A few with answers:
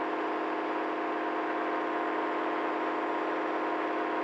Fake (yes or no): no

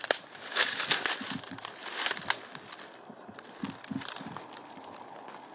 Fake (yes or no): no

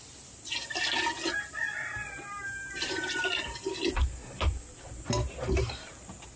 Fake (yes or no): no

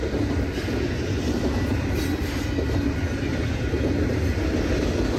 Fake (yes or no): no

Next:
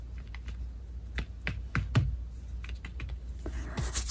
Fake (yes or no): no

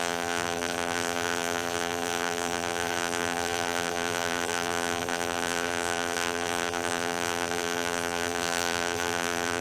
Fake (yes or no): yes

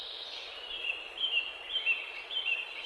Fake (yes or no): no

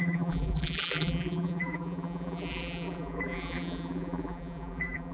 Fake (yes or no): yes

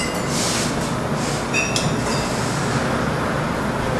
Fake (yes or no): no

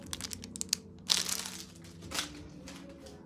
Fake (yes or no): no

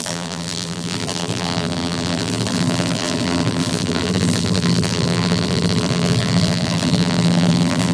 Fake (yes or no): yes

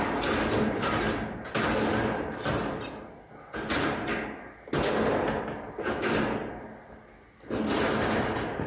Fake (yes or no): no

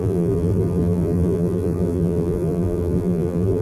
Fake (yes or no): yes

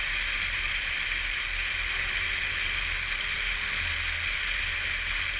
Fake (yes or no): no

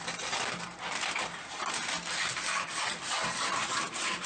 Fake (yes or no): yes